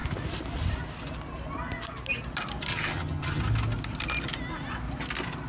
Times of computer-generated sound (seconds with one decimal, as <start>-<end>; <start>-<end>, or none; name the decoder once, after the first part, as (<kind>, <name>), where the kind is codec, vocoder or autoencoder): 2.7-3.4 (vocoder, HiFi-GAN)